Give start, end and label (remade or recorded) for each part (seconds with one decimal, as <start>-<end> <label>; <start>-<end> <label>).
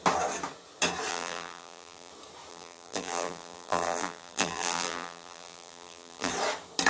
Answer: 0.0-1.1 recorded; 1.1-2.1 remade; 2.1-2.5 recorded; 2.5-6.3 remade; 6.3-6.9 recorded